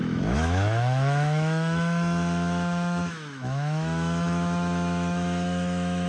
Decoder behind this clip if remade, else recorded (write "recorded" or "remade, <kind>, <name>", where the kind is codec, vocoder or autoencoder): remade, autoencoder, DAC-VAE